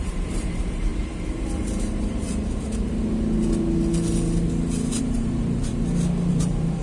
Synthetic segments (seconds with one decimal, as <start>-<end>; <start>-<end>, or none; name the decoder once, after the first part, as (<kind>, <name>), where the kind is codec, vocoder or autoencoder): 0.0-0.9 (vocoder, BigVGAN v2); 5.0-5.7; 6.3-6.8

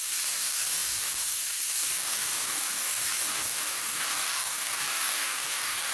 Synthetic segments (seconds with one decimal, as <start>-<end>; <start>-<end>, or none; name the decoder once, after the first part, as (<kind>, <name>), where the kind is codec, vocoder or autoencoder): 0.0-5.9 (codec, DAC)